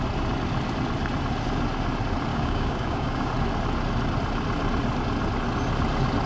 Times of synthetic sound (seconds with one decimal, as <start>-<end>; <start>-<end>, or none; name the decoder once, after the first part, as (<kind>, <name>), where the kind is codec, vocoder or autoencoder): 2.3-3.3 (codec, DAC)